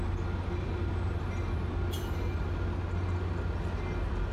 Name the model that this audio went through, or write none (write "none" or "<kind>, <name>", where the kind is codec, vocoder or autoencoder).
none